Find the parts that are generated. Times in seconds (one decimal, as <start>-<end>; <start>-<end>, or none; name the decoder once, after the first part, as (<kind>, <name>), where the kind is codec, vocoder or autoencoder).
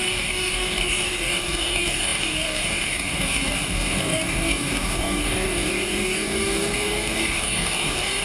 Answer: 0.0-8.2 (codec, DAC)